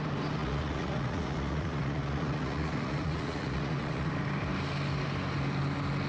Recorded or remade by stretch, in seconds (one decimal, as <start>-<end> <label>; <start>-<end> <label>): 0.0-0.4 recorded; 0.4-4.1 remade; 4.1-6.1 recorded